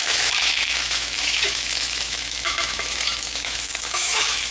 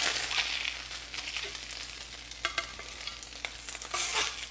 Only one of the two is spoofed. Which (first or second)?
first